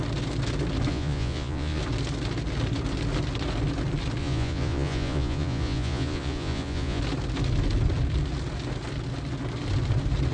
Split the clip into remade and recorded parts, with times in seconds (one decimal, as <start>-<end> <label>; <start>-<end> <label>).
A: 0.0-0.9 recorded; 0.9-1.8 remade; 1.8-4.2 recorded; 4.2-7.0 remade; 7.0-10.3 recorded